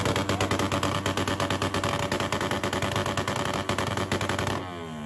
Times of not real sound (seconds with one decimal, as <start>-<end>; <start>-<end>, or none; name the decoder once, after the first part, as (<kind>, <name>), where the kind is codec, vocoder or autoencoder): none